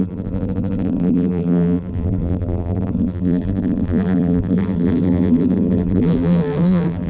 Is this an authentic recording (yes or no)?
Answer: no